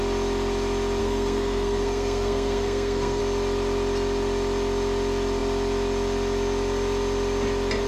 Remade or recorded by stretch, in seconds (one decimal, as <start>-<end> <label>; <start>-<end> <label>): 0.0-1.0 recorded; 1.0-3.2 remade; 3.2-7.9 recorded